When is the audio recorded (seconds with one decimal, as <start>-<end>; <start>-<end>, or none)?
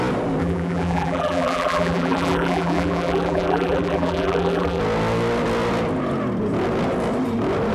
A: 0.0-0.4; 4.8-7.7